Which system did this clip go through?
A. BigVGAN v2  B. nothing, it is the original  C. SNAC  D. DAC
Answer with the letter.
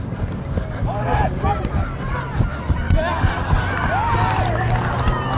B